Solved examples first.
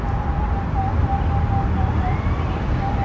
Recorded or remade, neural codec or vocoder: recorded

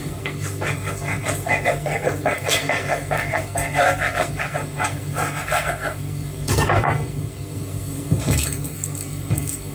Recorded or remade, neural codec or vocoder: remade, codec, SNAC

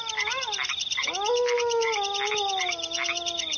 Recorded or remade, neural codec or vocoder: recorded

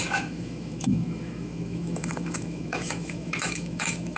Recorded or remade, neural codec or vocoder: remade, autoencoder, DAC-VAE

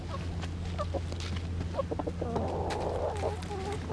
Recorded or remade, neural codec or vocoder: recorded